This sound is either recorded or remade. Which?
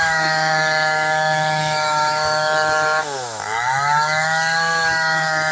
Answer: remade